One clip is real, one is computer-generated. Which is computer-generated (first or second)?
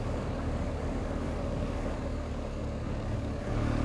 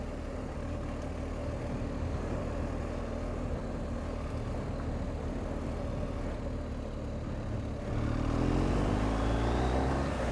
first